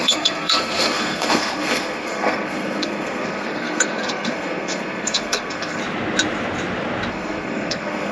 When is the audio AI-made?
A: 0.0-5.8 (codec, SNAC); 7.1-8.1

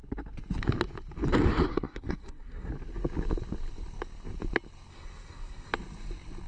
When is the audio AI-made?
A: 1.7-2.7 (codec, SNAC); 4.9-5.7

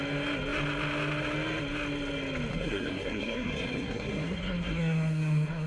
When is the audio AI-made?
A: 2.5-5.7 (codec, SNAC)

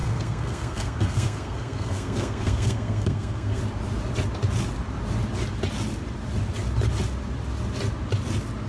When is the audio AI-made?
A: 0.0-3.6 (codec, SNAC)

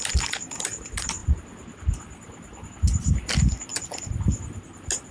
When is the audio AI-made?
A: none

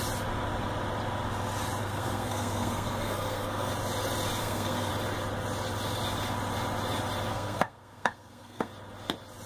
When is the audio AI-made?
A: 1.8-3.7 (codec, SNAC); 4.4-4.9; 7.3-8.7